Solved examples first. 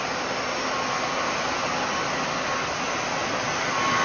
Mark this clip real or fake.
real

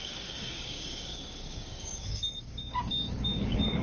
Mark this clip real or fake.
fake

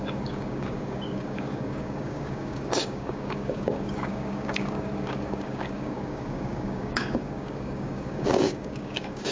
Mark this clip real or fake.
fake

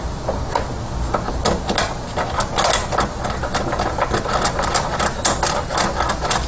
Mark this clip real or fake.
real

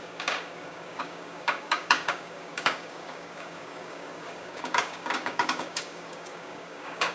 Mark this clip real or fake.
fake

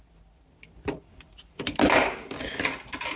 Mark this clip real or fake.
real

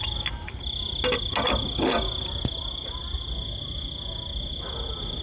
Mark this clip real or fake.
real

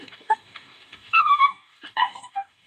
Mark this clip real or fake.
fake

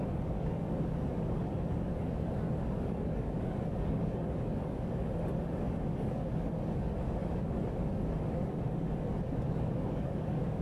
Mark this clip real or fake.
fake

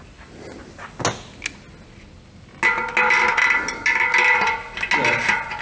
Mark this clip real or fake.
real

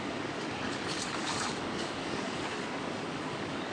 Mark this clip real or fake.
fake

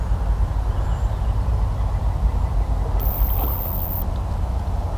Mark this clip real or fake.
real